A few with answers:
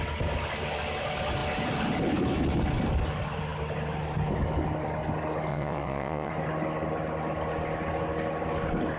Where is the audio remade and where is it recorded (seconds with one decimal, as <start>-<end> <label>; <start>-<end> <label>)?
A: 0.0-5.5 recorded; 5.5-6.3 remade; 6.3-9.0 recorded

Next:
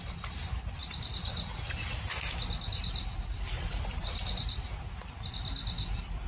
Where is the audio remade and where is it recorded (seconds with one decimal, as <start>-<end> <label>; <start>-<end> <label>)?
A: 0.0-6.3 recorded

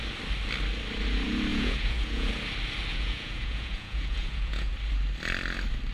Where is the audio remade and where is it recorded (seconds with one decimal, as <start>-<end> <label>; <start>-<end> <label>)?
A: 0.0-1.5 recorded; 1.5-2.3 remade; 2.3-2.9 recorded; 2.9-4.7 remade; 4.7-5.9 recorded

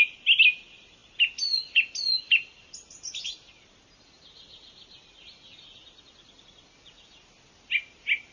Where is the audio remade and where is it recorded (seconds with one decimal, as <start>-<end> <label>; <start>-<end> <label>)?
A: 0.0-8.3 recorded